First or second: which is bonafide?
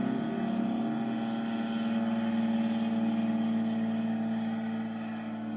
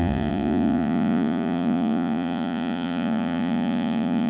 first